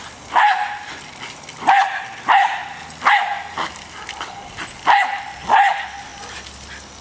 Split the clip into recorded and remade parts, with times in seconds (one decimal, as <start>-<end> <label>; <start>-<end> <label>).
0.0-7.0 recorded